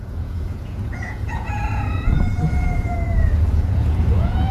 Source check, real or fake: fake